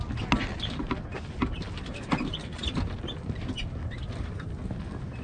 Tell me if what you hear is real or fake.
real